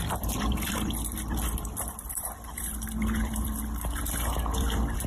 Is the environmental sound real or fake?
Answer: fake